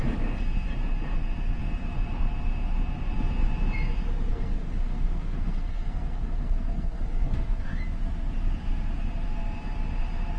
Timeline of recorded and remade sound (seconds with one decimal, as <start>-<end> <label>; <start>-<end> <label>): 0.0-4.3 recorded; 4.3-7.8 remade; 7.8-10.4 recorded